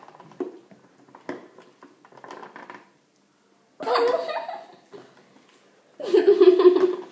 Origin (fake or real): real